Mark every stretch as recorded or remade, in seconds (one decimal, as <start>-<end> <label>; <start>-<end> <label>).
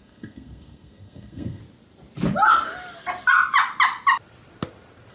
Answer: 0.0-1.6 remade; 1.6-5.1 recorded